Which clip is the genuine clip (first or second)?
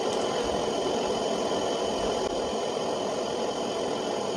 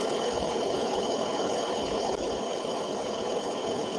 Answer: first